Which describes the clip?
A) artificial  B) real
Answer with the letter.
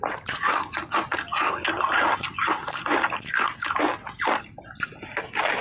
B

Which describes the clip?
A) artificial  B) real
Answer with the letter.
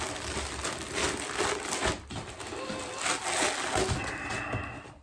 B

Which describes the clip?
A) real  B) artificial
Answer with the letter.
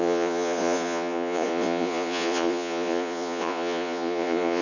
B